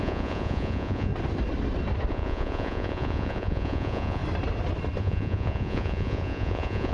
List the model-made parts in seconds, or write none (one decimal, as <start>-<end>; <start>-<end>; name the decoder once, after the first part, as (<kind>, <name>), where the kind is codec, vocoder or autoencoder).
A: 0.0-1.1 (vocoder, Vocos); 2.1-4.2; 5.0-6.9